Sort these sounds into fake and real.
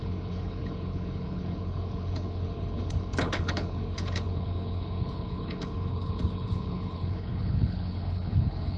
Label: fake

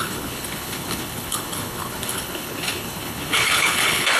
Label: fake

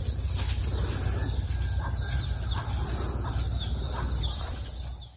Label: real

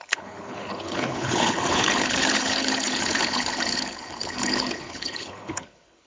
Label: fake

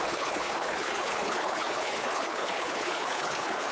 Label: fake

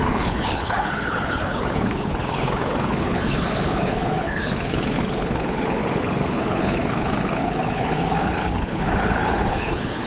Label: fake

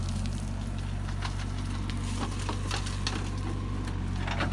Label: real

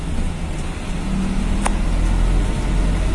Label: real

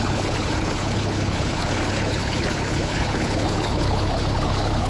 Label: fake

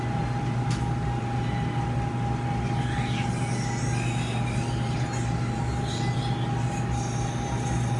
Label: real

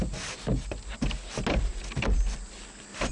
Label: real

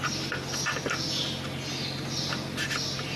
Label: real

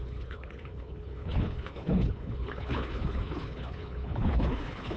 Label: fake